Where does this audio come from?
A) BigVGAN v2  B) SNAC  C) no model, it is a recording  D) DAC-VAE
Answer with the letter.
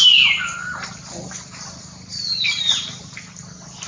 C